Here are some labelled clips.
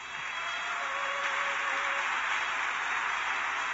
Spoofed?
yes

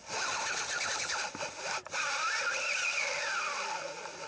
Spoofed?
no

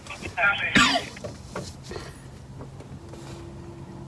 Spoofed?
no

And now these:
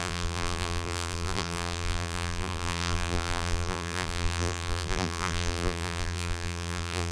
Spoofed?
yes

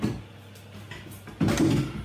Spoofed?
no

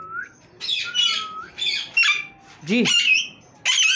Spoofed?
no